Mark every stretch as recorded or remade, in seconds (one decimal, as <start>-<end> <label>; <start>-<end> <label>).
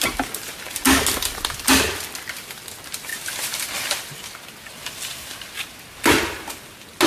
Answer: 0.0-7.1 recorded